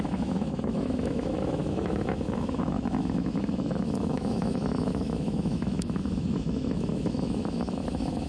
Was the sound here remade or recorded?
remade